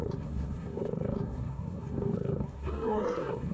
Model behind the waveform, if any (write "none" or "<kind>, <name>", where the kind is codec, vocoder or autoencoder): codec, SNAC